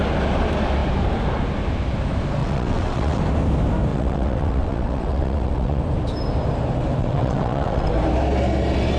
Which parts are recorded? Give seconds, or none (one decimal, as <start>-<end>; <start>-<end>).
0.0-2.4; 3.2-3.9; 5.8-7.0; 7.9-9.0